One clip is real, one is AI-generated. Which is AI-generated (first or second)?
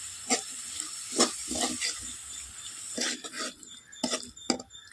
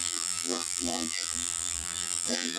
second